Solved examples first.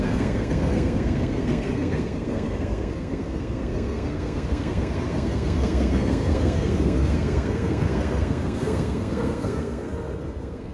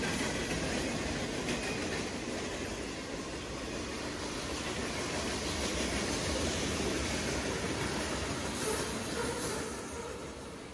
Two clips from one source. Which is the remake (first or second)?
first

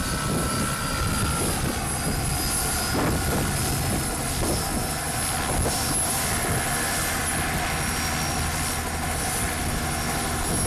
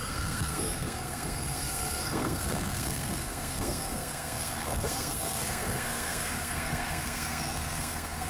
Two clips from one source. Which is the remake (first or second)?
second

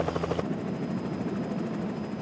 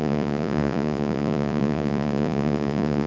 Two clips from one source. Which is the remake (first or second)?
second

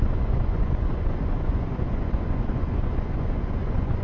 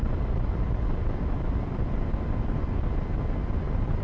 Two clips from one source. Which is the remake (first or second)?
first